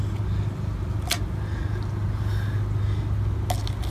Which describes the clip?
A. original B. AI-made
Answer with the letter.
A